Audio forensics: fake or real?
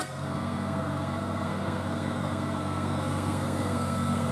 fake